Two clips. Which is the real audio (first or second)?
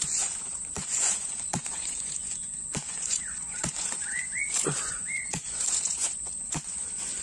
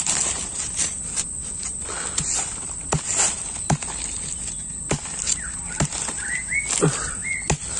second